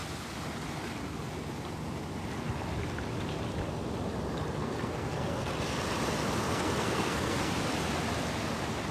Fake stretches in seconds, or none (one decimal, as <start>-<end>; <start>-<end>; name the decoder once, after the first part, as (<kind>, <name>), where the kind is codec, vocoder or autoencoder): 4.6-5.5 (codec, SNAC); 6.5-7.5